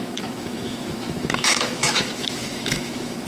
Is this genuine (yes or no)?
no